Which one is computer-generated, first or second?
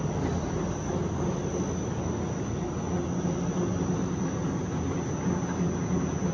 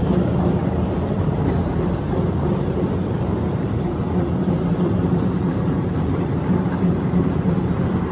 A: second